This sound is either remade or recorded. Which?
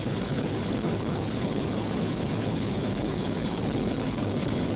remade